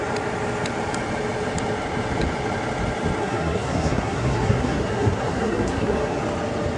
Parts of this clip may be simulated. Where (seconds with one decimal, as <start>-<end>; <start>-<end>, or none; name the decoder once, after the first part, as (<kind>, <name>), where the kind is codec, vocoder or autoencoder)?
3.2-6.2 (codec, SNAC)